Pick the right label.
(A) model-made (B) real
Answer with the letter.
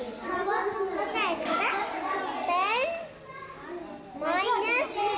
B